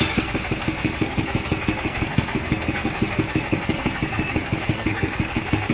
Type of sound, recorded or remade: remade